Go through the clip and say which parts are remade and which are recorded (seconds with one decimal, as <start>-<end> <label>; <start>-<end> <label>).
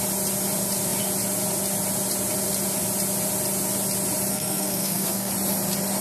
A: 0.0-4.3 recorded; 4.3-5.3 remade; 5.3-6.0 recorded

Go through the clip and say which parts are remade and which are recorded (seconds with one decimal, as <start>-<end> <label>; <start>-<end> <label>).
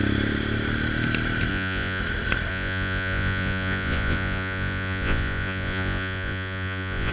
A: 0.0-1.5 recorded; 1.5-2.0 remade; 2.0-2.5 recorded; 2.5-7.1 remade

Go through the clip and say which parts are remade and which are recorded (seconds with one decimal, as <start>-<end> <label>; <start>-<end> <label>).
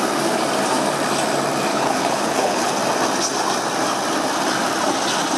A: 0.0-1.7 recorded; 1.7-2.7 remade; 2.7-5.4 recorded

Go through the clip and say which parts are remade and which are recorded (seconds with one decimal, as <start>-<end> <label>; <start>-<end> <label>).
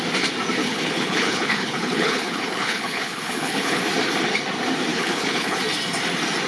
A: 0.0-0.6 recorded; 0.6-3.8 remade; 3.8-4.9 recorded; 4.9-5.6 remade; 5.6-6.5 recorded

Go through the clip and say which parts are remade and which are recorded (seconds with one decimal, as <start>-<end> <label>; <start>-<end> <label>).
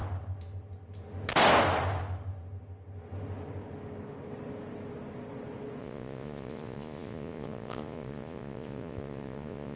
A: 0.0-5.8 recorded; 5.8-9.8 remade